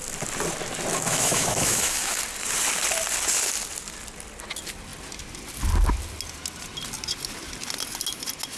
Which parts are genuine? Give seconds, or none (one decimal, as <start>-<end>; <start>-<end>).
0.0-0.9; 2.2-8.6